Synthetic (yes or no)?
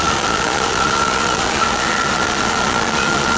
yes